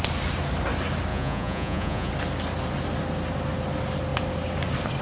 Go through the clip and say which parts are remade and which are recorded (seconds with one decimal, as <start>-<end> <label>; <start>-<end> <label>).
0.0-1.1 recorded; 1.1-2.1 remade; 2.1-5.0 recorded